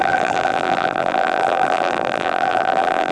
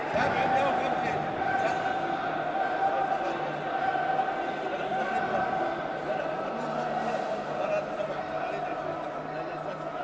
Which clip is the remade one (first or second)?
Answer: first